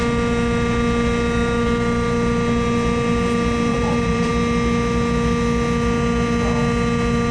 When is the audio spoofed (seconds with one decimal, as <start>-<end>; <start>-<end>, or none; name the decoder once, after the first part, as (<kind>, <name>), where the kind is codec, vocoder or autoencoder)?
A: 3.7-4.3 (vocoder, BigVGAN v2)